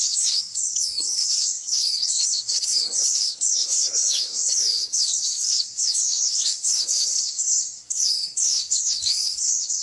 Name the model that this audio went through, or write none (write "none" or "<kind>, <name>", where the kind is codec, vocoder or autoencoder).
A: codec, SNAC